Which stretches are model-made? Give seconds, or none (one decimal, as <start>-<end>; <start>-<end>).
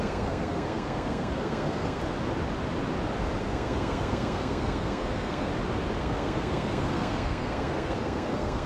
0.0-2.0; 3.4-5.5; 6.0-8.7